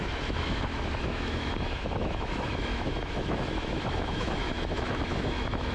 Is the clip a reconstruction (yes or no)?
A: yes